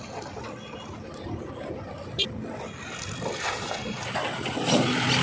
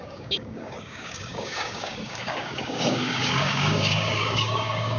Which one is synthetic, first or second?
second